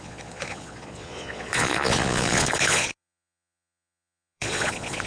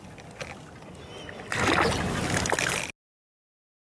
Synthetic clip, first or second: first